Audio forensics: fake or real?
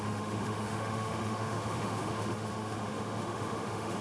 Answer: fake